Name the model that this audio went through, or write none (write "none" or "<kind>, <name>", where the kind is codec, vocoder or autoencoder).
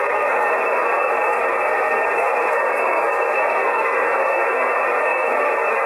codec, SNAC